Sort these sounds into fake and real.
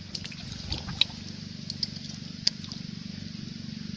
real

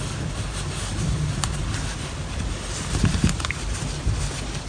real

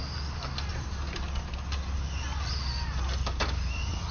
real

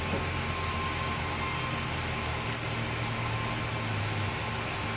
real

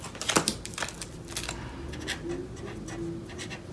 real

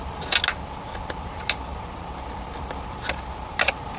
real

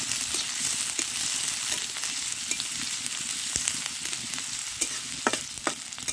real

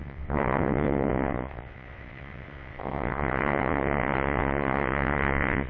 fake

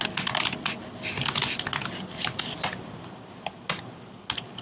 real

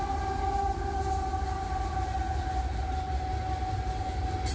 real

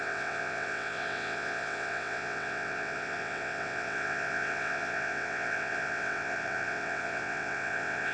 fake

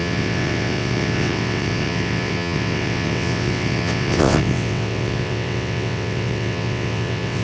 fake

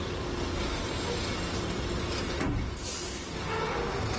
real